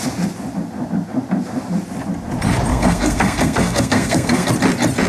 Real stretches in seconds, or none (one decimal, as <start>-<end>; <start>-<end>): 0.0-2.7; 4.5-5.1